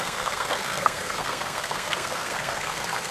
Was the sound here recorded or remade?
remade